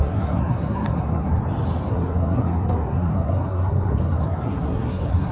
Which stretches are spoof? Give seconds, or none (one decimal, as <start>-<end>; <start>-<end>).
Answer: 0.0-1.4; 1.9-5.3